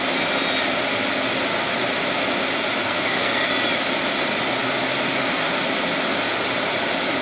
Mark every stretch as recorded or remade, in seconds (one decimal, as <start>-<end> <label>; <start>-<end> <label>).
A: 0.0-2.8 recorded; 2.8-3.5 remade; 3.5-7.2 recorded